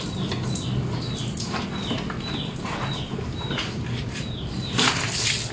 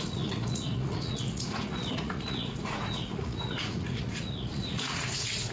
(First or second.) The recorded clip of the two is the first